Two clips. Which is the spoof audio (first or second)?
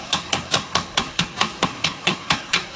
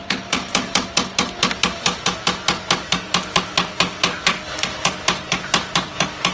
first